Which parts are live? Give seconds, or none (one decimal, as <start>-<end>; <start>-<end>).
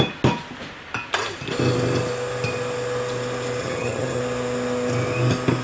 0.0-3.6; 4.2-5.6